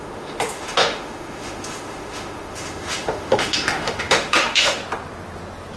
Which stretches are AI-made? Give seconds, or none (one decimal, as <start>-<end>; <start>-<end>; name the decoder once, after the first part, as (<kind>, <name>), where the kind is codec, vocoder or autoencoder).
0.0-4.8 (autoencoder, DAC-VAE)